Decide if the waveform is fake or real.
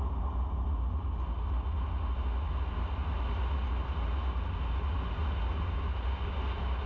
real